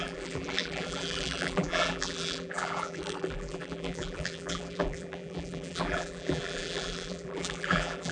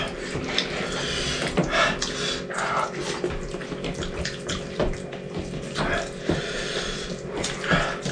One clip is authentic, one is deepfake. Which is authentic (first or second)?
second